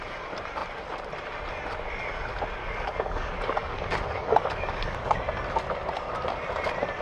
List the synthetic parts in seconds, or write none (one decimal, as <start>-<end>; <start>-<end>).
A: 2.6-5.1